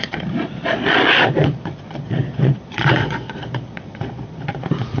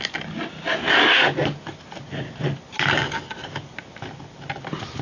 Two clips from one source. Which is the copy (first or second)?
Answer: first